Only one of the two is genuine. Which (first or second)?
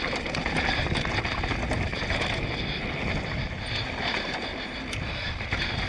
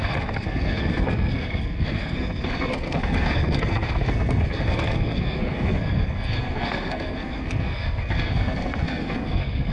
first